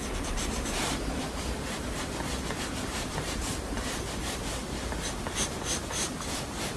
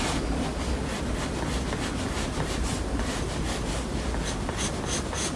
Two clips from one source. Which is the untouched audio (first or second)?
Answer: second